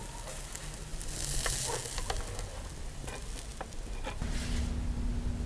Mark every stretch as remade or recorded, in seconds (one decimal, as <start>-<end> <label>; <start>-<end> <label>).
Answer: 0.0-3.5 recorded; 3.5-4.4 remade; 4.4-5.5 recorded